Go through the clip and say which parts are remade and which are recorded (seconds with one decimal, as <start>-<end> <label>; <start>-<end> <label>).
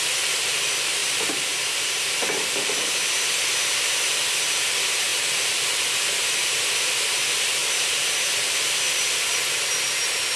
0.0-1.0 recorded; 1.0-2.8 remade; 2.8-10.4 recorded